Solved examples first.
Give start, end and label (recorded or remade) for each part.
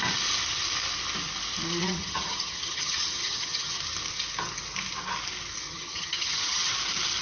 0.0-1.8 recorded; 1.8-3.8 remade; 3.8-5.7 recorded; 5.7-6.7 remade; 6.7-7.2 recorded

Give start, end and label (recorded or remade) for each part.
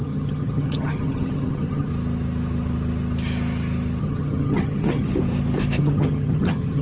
0.0-1.9 remade; 1.9-4.0 recorded; 4.0-5.1 remade; 5.1-5.8 recorded; 5.8-6.8 remade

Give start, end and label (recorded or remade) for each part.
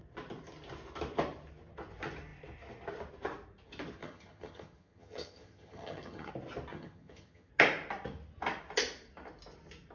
0.0-4.0 recorded; 4.0-6.3 remade; 6.3-6.7 recorded; 6.7-7.5 remade; 7.5-9.9 recorded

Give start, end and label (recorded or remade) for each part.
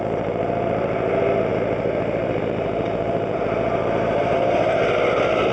0.0-5.5 recorded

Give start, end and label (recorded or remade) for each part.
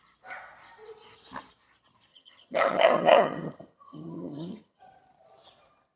0.0-2.1 recorded; 2.1-4.8 remade; 4.8-6.0 recorded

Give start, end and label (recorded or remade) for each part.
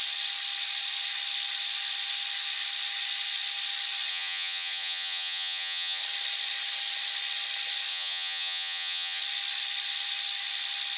0.0-4.1 recorded; 4.1-6.0 remade; 6.0-7.9 recorded; 7.9-9.2 remade; 9.2-11.0 recorded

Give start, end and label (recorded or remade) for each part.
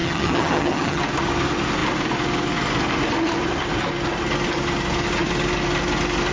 0.0-1.0 remade; 1.0-6.3 recorded